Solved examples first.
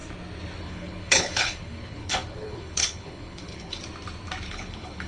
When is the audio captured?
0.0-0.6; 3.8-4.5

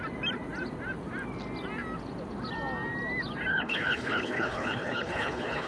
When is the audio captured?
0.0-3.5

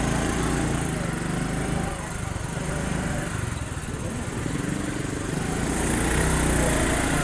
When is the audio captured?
0.0-7.2